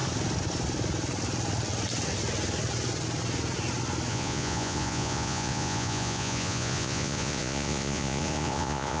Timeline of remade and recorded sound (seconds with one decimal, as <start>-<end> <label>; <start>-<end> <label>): 0.0-4.1 recorded; 4.1-9.0 remade